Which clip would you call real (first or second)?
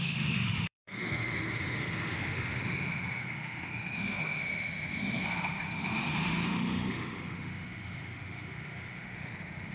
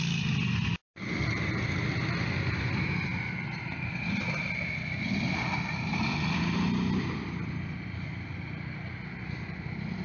second